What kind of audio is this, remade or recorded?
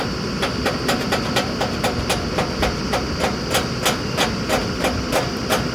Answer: recorded